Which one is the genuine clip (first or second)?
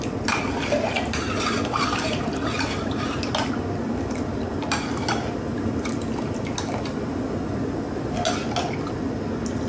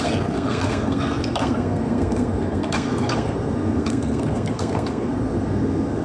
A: first